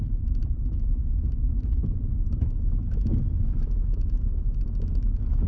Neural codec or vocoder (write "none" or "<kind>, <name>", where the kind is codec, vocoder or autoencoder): autoencoder, DAC-VAE